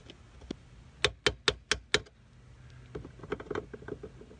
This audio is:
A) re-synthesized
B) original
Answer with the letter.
B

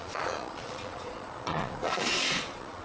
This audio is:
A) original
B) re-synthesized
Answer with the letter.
B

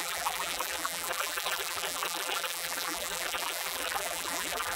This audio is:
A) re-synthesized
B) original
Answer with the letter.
A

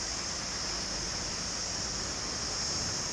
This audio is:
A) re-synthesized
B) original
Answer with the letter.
B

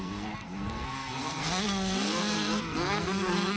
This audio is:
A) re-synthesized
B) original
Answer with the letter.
A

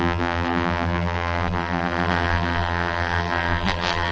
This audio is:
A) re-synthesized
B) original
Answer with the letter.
A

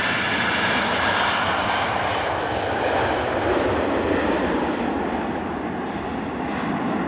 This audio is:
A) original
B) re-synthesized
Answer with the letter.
B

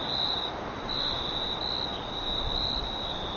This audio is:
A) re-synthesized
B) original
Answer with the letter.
B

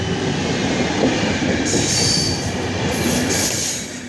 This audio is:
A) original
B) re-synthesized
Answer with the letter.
A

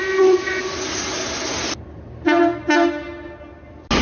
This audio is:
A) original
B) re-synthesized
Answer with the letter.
A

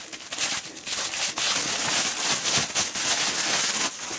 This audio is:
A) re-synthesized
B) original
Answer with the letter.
B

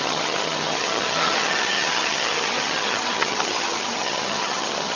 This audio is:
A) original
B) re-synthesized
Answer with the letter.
B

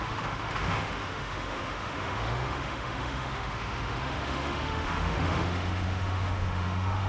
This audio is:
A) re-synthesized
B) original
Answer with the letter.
A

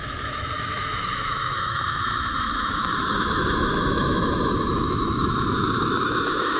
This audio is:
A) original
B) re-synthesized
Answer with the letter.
B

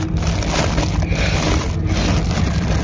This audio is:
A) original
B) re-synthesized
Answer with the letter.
A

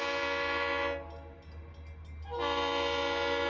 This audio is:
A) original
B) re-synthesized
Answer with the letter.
A